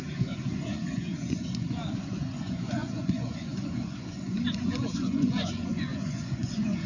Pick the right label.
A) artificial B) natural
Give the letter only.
A